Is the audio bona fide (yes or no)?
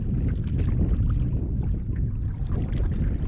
yes